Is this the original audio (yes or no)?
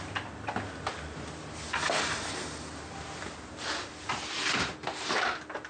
yes